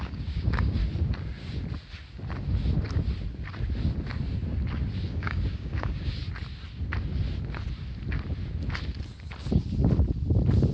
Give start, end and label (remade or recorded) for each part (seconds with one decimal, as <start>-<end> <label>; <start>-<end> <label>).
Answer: 0.0-0.8 remade; 0.8-5.1 recorded; 5.1-6.2 remade; 6.2-10.7 recorded